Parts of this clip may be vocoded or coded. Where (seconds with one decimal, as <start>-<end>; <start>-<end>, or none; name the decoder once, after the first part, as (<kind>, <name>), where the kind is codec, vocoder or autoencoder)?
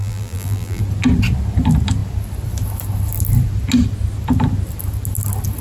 0.0-0.8 (vocoder, BigVGAN v2)